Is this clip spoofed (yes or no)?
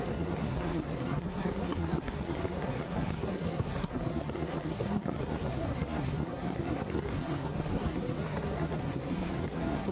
yes